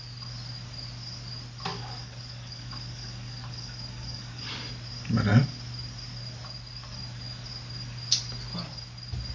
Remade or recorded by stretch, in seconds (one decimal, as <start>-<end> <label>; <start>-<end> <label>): 0.0-1.7 recorded; 1.7-4.5 remade; 4.5-9.3 recorded

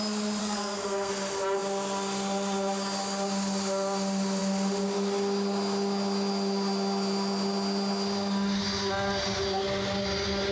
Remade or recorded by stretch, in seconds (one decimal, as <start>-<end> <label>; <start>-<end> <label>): 0.0-0.4 recorded; 0.4-1.1 remade; 1.1-10.5 recorded

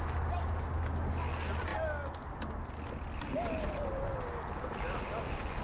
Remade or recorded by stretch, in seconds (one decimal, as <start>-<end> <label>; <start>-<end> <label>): 0.0-5.6 recorded

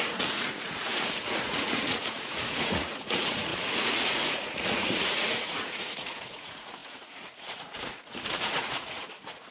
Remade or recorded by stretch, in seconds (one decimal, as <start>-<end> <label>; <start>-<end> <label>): 0.0-9.5 remade

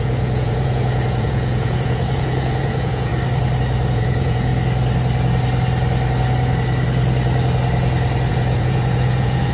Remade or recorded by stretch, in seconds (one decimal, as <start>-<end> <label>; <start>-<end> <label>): 0.0-3.1 remade; 3.1-3.9 recorded; 3.9-4.5 remade; 4.5-8.3 recorded; 8.3-9.5 remade

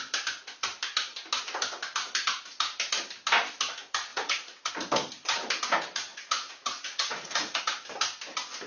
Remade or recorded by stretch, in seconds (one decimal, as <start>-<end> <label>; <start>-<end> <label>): 0.0-4.1 recorded; 4.1-4.7 remade; 4.7-6.1 recorded; 6.1-7.6 remade; 7.6-8.7 recorded

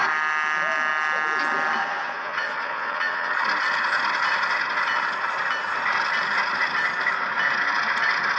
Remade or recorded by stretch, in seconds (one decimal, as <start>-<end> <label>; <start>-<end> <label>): 0.0-1.8 recorded; 1.8-3.3 remade; 3.3-8.4 recorded